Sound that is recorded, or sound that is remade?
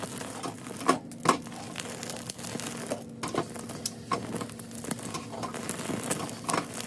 recorded